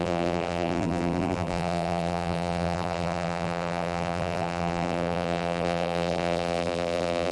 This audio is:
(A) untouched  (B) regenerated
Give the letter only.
B